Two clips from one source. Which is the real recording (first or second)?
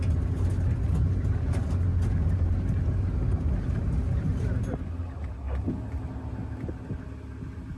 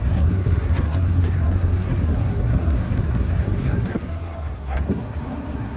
first